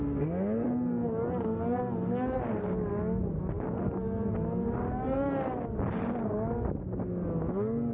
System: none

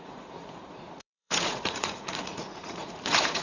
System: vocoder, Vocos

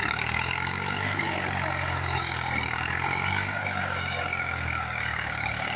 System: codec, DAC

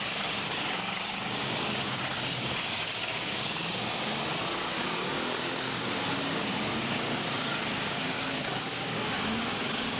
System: codec, DAC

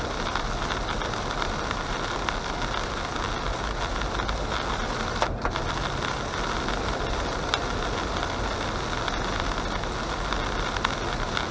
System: none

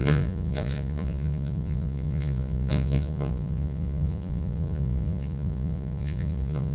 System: vocoder, Vocos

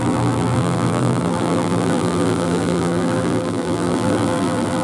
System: vocoder, BigVGAN v2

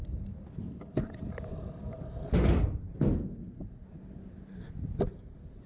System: none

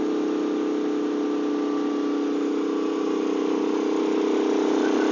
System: none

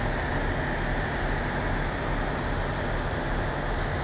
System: none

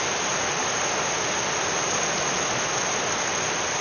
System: none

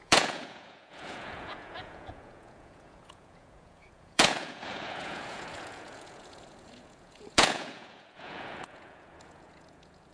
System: vocoder, Vocos